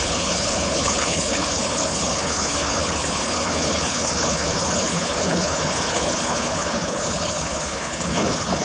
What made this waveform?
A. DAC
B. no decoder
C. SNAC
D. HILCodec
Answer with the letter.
D